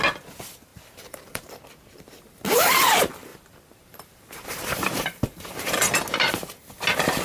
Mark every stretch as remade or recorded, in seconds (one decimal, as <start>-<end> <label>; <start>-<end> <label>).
0.0-0.7 recorded; 0.7-1.5 remade; 1.5-3.3 recorded; 3.3-5.9 remade; 5.9-7.2 recorded